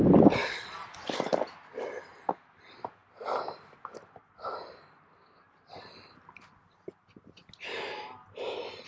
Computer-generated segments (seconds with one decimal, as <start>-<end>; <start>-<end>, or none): none